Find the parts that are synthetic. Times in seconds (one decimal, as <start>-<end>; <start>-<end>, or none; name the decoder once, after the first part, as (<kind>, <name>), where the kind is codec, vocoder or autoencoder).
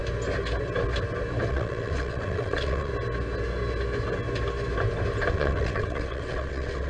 1.5-2.9 (vocoder, WaveNeXt); 5.3-6.9